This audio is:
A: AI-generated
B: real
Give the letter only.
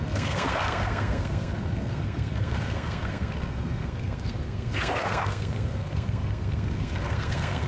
A